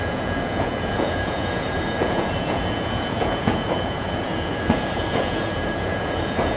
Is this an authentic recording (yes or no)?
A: no